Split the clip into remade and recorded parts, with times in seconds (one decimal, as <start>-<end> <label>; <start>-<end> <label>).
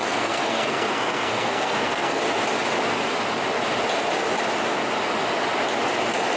0.0-2.2 remade; 2.2-6.4 recorded